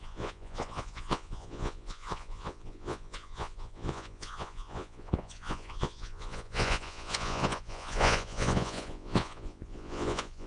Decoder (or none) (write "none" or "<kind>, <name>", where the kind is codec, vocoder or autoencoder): vocoder, Vocos